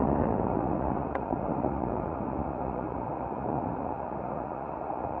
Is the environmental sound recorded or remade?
remade